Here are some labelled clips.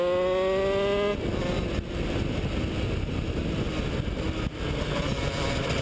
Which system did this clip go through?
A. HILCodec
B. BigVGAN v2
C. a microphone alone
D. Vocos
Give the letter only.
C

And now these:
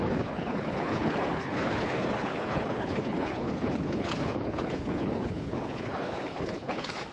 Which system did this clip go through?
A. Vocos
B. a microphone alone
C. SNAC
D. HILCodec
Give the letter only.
D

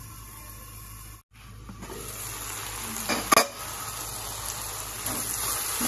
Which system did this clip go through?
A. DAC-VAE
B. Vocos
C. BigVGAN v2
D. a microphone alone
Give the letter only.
D